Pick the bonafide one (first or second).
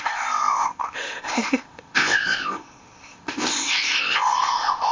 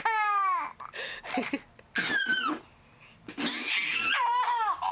second